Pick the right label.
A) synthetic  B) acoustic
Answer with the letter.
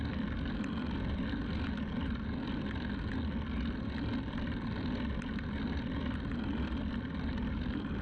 B